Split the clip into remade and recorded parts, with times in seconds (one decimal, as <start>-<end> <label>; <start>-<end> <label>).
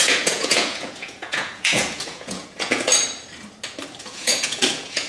0.0-2.9 remade; 2.9-4.0 recorded; 4.0-5.1 remade